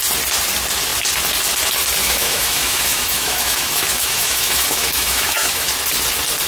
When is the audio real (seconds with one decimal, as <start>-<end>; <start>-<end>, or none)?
0.0-2.0; 5.7-6.5